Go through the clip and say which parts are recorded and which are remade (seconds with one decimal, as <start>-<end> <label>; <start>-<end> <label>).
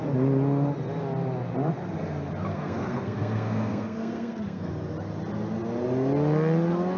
0.0-2.5 recorded; 2.5-4.7 remade; 4.7-7.0 recorded